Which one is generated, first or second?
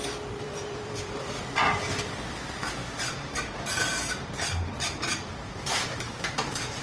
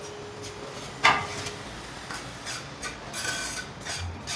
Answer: first